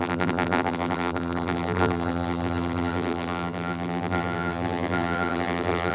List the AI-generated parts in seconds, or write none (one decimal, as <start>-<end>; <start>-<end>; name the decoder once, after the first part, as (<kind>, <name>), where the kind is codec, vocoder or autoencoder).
0.0-5.9 (vocoder, BigVGAN v2)

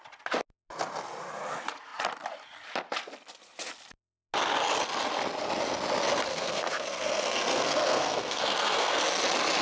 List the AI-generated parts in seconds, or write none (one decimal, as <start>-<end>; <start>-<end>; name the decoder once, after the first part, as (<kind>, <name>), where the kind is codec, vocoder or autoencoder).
6.3-9.0 (codec, SNAC)